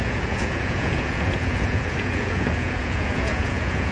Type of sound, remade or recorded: remade